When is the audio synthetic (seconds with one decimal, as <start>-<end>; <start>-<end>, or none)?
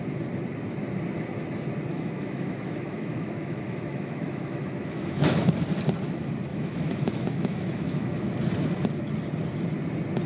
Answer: 1.9-5.5; 6.5-8.3